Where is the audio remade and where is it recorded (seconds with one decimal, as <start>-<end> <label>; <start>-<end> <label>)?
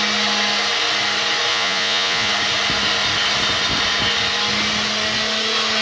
0.0-1.5 recorded; 1.5-2.3 remade; 2.3-5.8 recorded